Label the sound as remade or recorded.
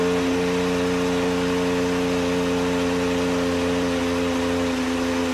recorded